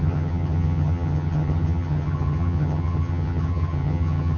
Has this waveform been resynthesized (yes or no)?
yes